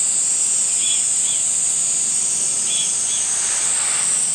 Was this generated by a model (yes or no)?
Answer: no